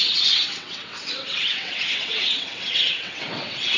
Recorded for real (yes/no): no